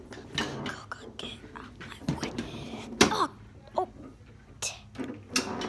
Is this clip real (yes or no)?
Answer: yes